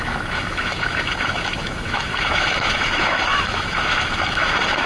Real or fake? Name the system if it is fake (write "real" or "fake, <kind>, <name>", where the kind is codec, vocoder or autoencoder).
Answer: fake, autoencoder, DAC-VAE